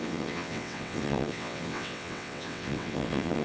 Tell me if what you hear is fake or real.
fake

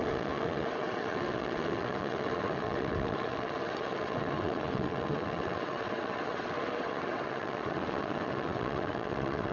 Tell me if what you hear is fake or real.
fake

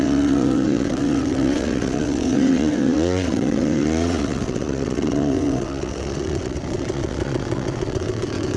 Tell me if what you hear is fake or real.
fake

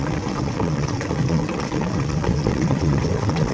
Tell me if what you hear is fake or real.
fake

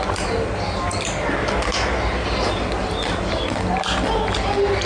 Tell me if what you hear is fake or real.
real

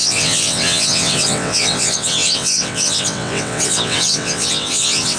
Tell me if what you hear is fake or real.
fake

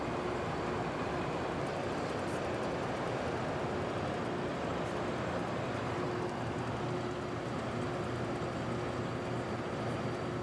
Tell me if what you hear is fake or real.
real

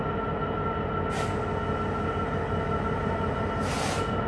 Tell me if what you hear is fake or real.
real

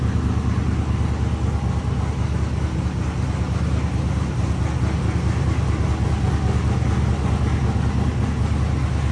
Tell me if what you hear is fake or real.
real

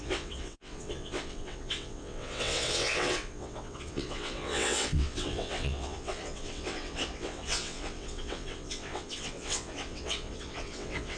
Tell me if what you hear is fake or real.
fake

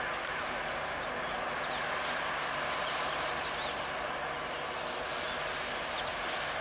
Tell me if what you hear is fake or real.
real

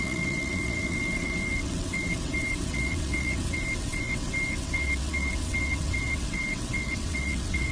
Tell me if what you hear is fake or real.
fake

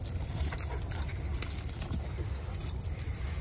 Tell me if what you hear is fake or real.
real